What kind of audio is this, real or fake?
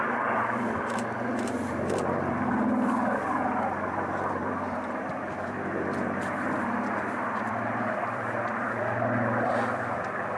fake